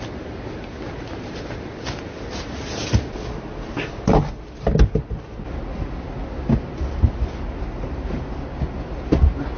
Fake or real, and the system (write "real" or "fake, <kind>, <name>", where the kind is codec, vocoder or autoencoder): real